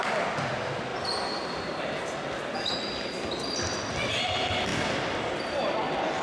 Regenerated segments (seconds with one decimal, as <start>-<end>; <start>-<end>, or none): none